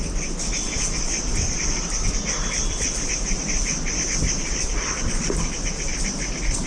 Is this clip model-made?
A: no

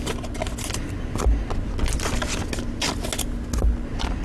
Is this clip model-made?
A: no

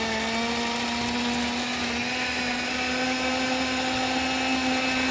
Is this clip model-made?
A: no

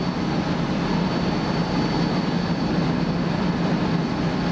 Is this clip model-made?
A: no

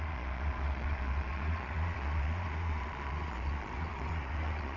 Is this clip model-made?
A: yes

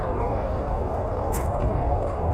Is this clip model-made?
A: yes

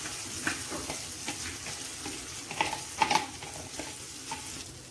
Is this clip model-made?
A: no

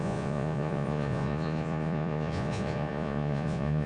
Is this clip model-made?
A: yes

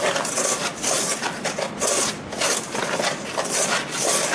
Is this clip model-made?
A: no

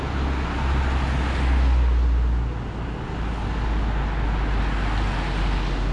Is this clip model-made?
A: no